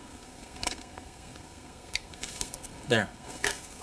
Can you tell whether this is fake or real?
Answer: fake